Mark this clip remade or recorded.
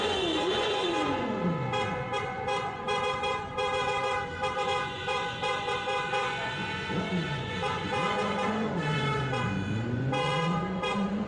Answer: remade